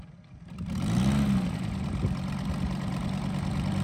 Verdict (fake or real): real